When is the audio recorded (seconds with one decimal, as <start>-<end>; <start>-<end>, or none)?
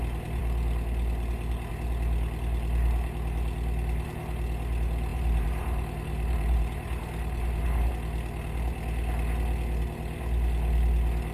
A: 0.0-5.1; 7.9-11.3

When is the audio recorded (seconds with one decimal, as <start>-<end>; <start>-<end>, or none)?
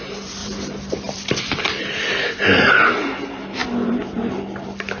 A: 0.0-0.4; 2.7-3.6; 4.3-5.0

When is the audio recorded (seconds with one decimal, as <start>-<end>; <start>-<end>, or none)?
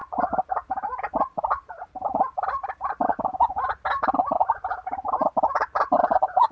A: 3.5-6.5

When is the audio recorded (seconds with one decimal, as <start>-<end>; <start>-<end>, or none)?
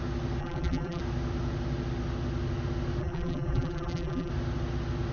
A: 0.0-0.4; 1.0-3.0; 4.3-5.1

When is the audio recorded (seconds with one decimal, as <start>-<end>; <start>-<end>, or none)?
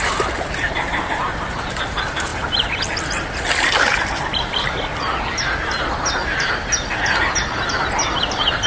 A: none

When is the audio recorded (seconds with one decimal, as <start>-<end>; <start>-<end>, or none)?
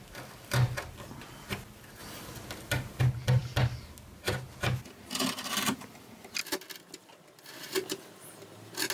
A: 0.0-8.9